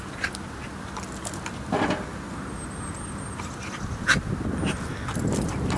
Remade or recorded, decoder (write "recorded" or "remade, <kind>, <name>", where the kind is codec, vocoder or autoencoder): recorded